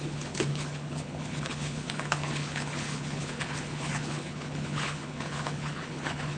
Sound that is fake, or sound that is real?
fake